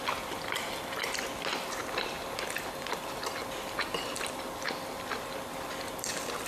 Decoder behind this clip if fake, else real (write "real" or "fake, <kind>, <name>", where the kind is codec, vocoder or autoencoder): real